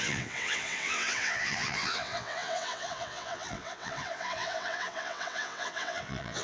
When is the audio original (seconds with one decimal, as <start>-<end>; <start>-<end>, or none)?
none